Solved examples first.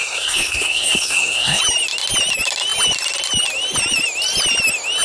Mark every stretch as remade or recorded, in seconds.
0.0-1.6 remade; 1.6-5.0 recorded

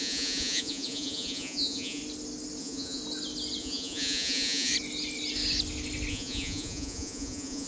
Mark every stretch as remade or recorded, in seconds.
0.0-2.0 remade; 2.0-2.6 recorded; 2.6-3.0 remade; 3.0-3.6 recorded; 3.6-4.7 remade; 4.7-6.1 recorded; 6.1-7.7 remade

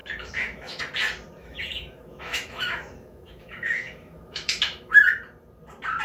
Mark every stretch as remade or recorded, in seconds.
0.0-0.8 remade; 0.8-1.4 recorded; 1.4-5.0 remade; 5.0-6.0 recorded